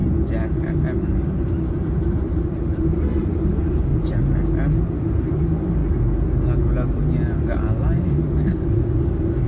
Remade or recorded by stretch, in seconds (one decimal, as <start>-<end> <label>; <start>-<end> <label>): 0.0-2.1 recorded; 2.1-3.9 remade; 3.9-4.8 recorded; 4.8-5.8 remade; 5.8-8.7 recorded; 8.7-9.5 remade